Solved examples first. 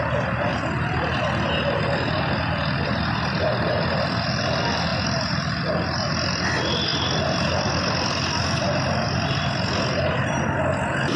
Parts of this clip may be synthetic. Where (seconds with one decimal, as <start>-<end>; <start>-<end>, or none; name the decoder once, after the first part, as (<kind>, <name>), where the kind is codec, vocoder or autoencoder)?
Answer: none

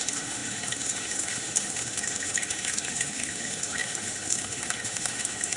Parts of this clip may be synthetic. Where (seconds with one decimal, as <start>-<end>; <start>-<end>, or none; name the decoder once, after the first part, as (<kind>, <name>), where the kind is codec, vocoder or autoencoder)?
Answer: 0.0-5.6 (autoencoder, DAC-VAE)

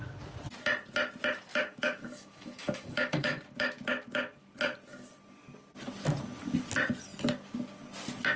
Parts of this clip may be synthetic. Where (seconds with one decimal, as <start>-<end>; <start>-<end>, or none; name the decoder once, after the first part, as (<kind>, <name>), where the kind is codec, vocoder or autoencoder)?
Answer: 1.5-3.4 (autoencoder, DAC-VAE)